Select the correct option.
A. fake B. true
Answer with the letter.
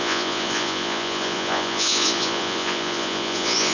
A